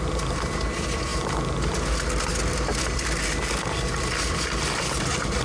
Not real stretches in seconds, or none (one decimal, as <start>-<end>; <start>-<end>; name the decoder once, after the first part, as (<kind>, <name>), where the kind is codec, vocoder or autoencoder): none